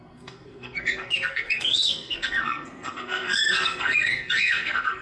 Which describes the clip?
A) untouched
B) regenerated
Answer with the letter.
B